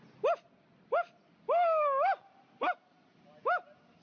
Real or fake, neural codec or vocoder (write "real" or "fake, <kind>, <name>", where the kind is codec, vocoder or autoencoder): real